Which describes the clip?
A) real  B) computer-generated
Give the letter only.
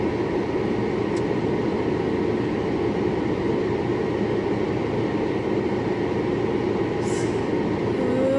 A